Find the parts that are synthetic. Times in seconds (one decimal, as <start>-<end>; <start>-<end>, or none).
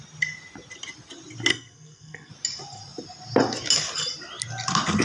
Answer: 1.5-2.3